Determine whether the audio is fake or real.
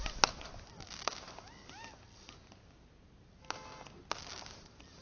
real